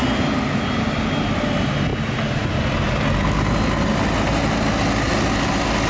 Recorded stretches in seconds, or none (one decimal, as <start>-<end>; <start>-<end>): 0.0-5.9